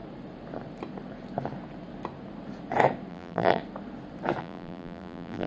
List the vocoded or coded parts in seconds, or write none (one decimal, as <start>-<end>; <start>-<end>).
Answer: 3.1-3.6; 4.4-5.5